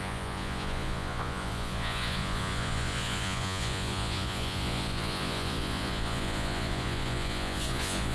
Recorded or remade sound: remade